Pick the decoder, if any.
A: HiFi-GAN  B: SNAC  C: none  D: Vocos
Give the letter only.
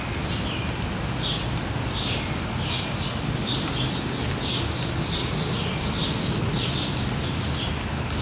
C